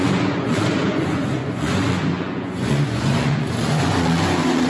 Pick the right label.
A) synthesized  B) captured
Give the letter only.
A